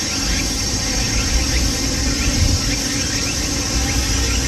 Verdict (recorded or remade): recorded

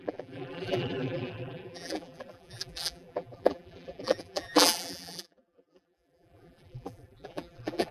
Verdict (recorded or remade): remade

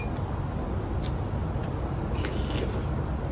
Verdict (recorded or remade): recorded